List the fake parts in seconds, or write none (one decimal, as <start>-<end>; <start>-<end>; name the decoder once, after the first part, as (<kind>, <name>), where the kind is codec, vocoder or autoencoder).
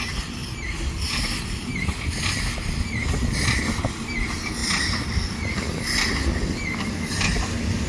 none